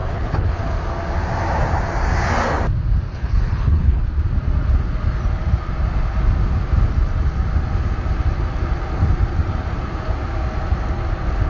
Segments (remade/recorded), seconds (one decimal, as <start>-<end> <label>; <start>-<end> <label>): 0.0-0.6 remade; 0.6-3.1 recorded; 3.1-4.0 remade; 4.0-11.5 recorded